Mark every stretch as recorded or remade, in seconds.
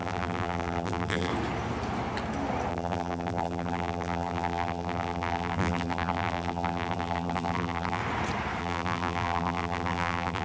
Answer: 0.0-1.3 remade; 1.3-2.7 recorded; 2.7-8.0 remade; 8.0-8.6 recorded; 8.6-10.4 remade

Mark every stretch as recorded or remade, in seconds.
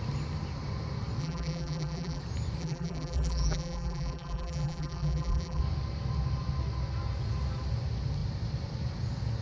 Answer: 0.0-1.2 recorded; 1.2-2.2 remade; 2.2-2.6 recorded; 2.6-5.6 remade; 5.6-9.4 recorded